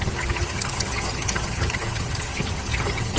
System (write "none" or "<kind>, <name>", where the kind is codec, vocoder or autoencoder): vocoder, HiFi-GAN